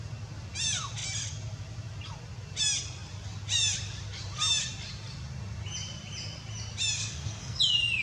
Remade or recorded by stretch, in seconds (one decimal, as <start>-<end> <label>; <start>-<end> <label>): 0.0-7.0 recorded; 7.0-7.6 remade; 7.6-8.0 recorded